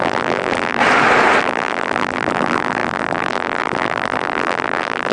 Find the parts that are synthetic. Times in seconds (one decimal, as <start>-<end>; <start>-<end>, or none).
0.0-0.8; 1.4-5.1

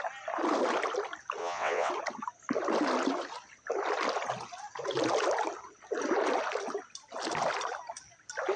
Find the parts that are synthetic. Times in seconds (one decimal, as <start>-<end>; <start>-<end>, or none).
1.4-1.9

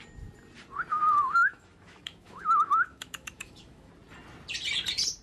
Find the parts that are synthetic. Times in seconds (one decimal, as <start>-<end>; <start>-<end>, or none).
0.9-3.9